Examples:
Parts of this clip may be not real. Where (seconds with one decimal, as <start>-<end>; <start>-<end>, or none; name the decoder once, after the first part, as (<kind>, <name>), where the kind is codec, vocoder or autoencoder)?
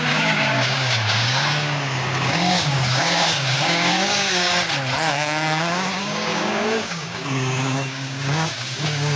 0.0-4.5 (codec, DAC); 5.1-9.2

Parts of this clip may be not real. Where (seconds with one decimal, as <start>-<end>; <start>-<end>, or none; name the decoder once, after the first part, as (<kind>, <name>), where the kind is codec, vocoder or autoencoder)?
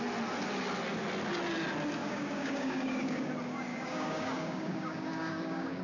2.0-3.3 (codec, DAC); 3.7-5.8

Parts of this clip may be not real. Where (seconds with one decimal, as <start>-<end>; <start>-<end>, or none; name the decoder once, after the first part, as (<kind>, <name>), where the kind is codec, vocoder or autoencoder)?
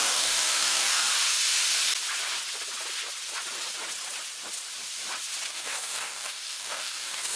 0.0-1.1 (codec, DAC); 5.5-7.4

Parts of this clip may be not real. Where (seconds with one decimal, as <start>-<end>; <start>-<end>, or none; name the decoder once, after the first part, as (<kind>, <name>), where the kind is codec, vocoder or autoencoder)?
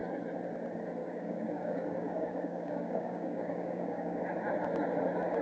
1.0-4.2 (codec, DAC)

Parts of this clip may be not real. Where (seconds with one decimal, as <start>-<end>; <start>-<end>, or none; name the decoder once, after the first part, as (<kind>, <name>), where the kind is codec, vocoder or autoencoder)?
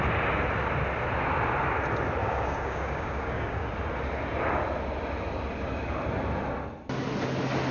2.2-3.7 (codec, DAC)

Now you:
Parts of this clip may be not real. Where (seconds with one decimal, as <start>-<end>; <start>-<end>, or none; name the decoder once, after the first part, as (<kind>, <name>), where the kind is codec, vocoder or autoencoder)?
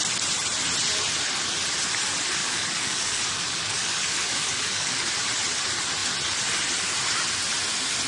2.4-5.1 (codec, DAC)